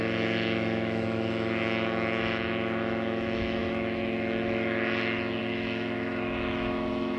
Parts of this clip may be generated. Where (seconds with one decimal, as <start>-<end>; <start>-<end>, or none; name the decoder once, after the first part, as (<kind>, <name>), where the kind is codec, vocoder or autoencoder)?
0.0-7.2 (autoencoder, DAC-VAE)